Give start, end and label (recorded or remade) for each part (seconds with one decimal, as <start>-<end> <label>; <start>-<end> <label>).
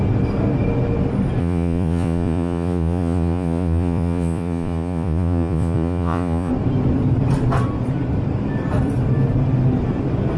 0.0-1.4 recorded; 1.4-6.5 remade; 6.5-10.4 recorded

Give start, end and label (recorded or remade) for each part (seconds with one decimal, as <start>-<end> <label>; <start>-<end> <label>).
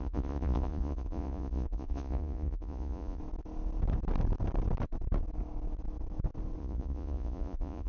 0.0-3.2 remade; 3.2-6.6 recorded; 6.6-7.9 remade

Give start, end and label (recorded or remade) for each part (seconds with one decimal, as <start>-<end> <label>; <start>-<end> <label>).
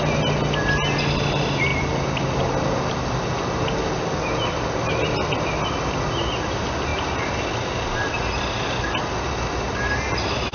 0.0-10.5 recorded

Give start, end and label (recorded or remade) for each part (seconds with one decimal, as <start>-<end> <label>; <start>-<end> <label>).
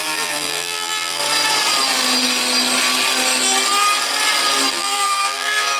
0.0-1.2 remade; 1.2-4.7 recorded; 4.7-5.8 remade